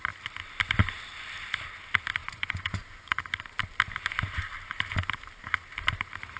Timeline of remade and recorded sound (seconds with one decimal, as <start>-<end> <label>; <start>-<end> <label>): 0.0-2.2 recorded; 2.2-3.2 remade; 3.2-6.4 recorded